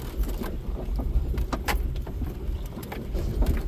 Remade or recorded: remade